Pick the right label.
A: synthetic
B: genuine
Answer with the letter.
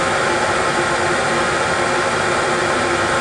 B